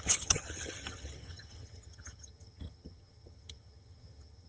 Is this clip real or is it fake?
fake